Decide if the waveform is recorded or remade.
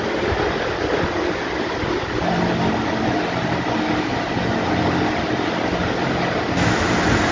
recorded